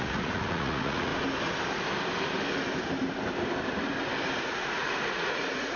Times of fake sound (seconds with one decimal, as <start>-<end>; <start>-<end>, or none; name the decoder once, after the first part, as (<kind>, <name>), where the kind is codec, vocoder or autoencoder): 0.0-1.1 (vocoder, Vocos); 4.4-5.8